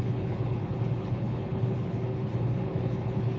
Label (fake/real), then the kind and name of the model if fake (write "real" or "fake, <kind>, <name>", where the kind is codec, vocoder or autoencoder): fake, codec, HILCodec